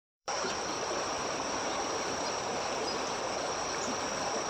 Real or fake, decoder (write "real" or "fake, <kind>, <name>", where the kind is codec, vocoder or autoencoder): fake, vocoder, BigVGAN v2